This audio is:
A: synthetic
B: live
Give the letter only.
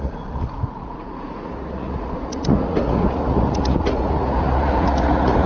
A